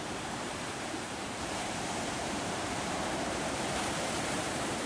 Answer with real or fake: fake